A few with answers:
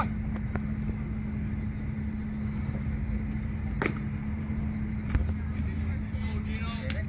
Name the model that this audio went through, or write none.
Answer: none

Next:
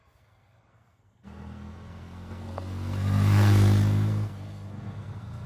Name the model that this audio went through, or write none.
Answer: codec, SNAC